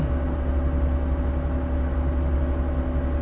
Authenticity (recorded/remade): recorded